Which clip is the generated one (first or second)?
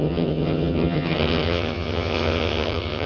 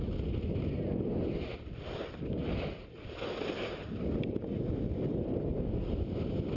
first